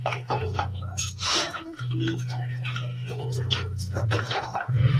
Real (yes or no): no